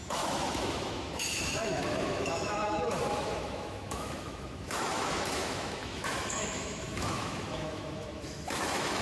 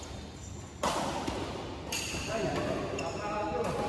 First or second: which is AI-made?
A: first